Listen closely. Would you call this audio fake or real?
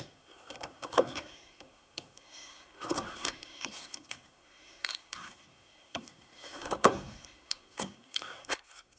fake